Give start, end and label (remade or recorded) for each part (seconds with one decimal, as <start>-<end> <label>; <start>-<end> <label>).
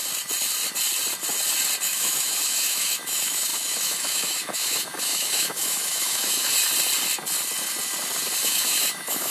0.0-1.8 recorded; 1.8-6.5 remade; 6.5-8.4 recorded; 8.4-9.3 remade